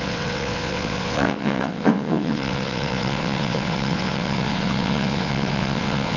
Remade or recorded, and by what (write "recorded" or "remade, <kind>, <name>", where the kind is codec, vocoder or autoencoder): remade, vocoder, WaveNeXt